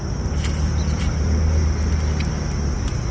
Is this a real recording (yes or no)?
yes